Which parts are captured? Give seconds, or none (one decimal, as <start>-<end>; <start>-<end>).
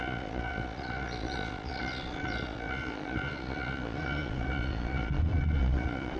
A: none